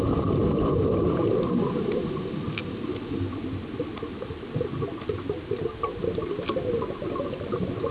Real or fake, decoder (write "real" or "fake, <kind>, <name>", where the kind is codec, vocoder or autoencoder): real